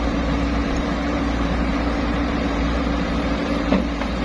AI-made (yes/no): yes